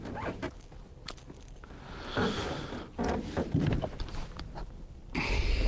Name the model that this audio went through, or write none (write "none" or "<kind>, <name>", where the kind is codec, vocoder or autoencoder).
none